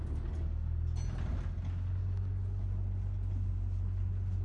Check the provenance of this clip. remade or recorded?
recorded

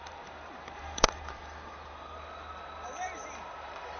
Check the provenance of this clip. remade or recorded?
remade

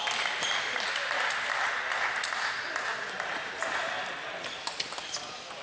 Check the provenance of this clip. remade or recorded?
recorded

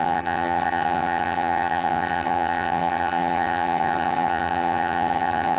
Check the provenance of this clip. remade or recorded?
remade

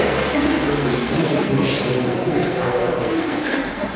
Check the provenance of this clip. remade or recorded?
remade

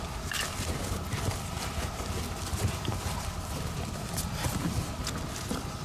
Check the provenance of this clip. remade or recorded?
recorded